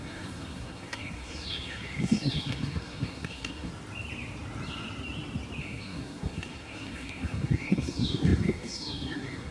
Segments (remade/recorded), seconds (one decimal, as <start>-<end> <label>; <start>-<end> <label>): 0.0-3.7 remade; 3.7-5.6 recorded; 5.6-9.5 remade